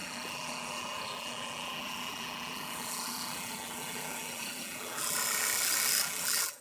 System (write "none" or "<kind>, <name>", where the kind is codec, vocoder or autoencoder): vocoder, BigVGAN v2